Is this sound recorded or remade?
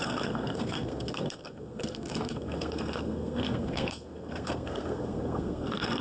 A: remade